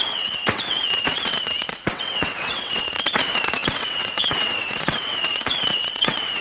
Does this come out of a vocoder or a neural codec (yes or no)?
yes